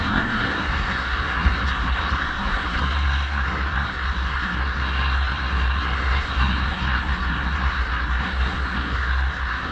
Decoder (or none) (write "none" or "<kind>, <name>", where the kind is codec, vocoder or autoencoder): codec, SNAC